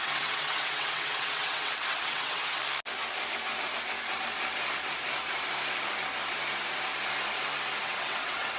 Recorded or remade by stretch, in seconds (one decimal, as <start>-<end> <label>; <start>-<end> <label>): 0.0-2.6 remade; 2.6-7.8 recorded; 7.8-8.6 remade